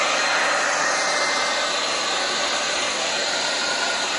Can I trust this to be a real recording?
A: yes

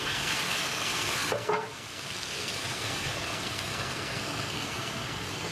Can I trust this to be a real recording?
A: no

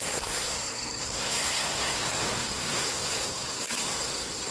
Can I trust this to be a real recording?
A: no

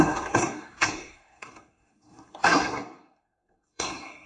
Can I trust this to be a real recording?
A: no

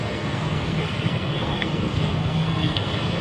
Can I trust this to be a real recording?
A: no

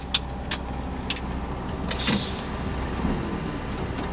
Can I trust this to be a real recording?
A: yes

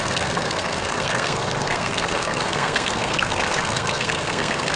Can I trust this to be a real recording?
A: no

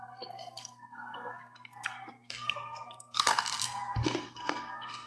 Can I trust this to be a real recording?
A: no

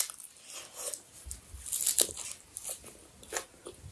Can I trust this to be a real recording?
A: yes